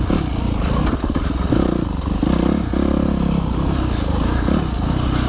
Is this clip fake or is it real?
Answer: real